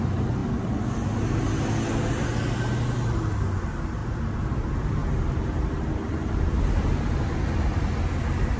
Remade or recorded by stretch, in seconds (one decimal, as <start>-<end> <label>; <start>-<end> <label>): 0.0-0.4 recorded; 0.4-0.9 remade; 0.9-5.0 recorded; 5.0-6.3 remade; 6.3-8.6 recorded